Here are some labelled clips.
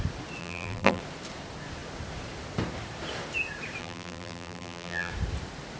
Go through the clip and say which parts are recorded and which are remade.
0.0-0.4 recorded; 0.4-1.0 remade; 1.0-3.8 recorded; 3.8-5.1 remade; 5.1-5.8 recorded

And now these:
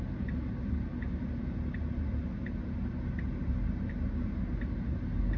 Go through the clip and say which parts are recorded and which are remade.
0.0-5.4 recorded

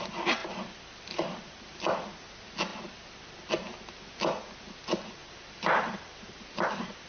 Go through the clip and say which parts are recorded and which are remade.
0.0-0.4 recorded; 0.4-1.6 remade; 1.6-5.2 recorded; 5.2-7.1 remade

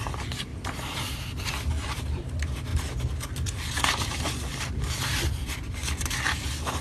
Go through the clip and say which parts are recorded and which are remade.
0.0-0.5 recorded; 0.5-2.2 remade; 2.2-4.5 recorded; 4.5-5.1 remade; 5.1-6.8 recorded